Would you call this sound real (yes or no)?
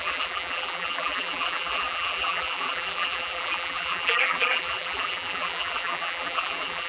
no